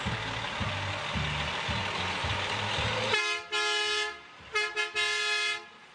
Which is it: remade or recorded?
recorded